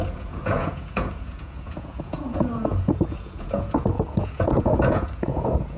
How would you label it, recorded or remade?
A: remade